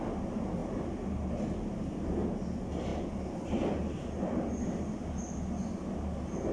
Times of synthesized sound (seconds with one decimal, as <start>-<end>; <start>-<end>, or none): none